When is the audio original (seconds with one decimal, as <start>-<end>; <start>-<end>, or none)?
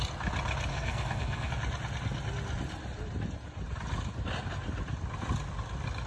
0.0-0.7; 1.5-6.1